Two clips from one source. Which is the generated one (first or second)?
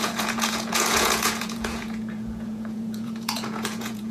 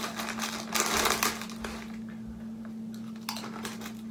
first